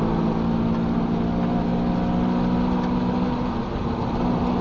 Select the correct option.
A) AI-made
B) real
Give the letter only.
B